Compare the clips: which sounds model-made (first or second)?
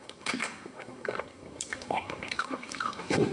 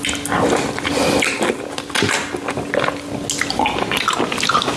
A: first